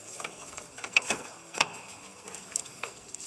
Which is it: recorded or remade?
remade